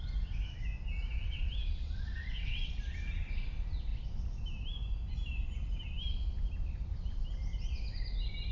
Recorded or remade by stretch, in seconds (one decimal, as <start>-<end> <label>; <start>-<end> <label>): 0.0-1.2 recorded; 1.2-2.7 remade; 2.7-8.5 recorded